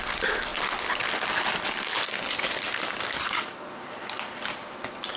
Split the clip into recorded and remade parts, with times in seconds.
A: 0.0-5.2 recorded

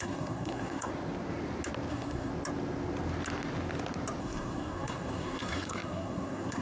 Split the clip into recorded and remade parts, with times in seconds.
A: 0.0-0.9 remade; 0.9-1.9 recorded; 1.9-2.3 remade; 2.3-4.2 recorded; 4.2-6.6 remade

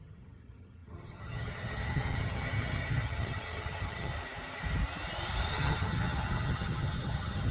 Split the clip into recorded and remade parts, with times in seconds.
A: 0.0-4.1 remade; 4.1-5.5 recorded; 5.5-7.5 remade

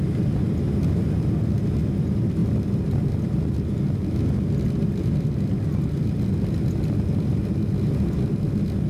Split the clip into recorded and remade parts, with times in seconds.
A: 0.0-8.9 recorded

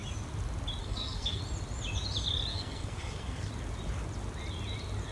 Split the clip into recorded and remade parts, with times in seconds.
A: 0.0-0.8 recorded; 0.8-1.4 remade; 1.4-2.5 recorded; 2.5-3.5 remade; 3.5-5.1 recorded